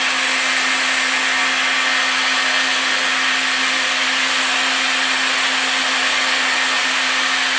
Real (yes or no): yes